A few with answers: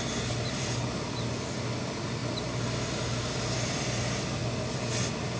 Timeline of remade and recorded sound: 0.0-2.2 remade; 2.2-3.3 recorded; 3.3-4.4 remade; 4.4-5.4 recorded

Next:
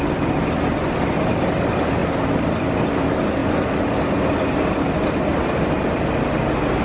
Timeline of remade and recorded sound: 0.0-3.4 recorded; 3.4-4.0 remade; 4.0-6.8 recorded